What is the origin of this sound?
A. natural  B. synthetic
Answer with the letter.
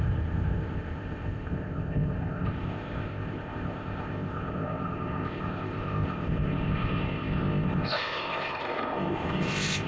B